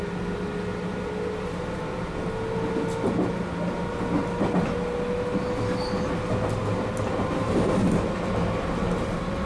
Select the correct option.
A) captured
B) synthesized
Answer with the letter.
A